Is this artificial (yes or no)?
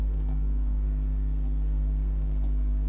yes